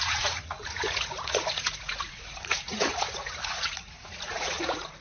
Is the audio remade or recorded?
remade